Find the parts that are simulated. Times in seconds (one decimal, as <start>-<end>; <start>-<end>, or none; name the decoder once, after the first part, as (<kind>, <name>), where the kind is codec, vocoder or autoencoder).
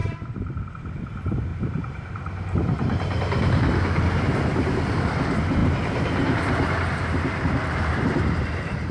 0.0-0.7 (vocoder, BigVGAN v2); 1.5-5.0; 5.6-7.9